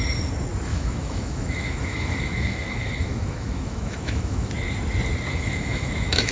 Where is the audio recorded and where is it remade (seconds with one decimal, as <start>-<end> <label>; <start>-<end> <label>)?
0.0-0.7 recorded; 0.7-4.5 remade; 4.5-5.3 recorded; 5.3-6.3 remade